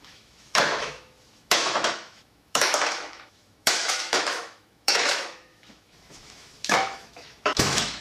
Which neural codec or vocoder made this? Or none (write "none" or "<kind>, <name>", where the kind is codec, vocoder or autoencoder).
autoencoder, DAC-VAE